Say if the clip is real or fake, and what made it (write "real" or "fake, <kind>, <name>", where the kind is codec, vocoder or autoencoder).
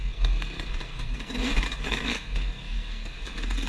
fake, codec, SNAC